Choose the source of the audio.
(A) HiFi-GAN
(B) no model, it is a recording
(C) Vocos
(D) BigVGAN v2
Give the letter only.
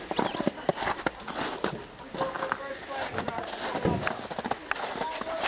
B